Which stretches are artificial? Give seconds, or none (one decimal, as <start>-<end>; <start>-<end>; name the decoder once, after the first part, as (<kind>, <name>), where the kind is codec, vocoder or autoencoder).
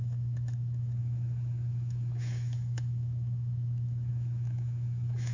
0.0-5.3 (autoencoder, DAC-VAE)